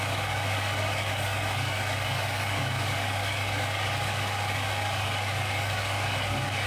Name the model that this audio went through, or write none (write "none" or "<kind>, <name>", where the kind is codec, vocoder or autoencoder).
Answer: codec, DAC